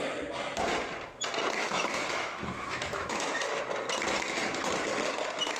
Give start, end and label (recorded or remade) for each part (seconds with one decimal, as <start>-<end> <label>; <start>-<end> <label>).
0.0-1.6 recorded; 1.6-3.6 remade; 3.6-5.6 recorded